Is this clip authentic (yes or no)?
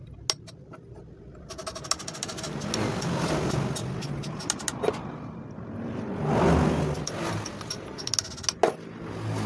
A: yes